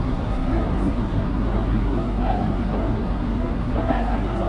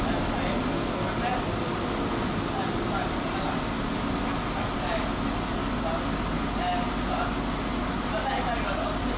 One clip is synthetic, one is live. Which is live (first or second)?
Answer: second